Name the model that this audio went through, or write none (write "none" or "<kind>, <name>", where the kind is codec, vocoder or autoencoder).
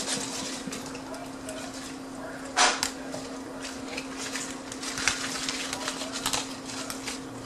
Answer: none